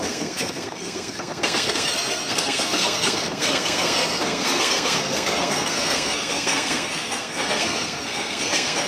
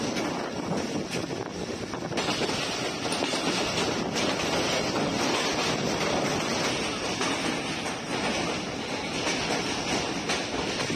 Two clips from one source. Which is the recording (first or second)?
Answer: second